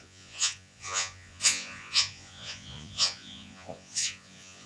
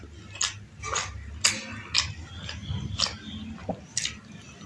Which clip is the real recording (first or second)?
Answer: second